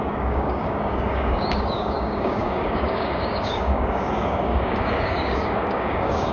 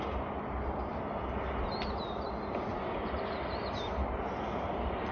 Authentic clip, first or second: second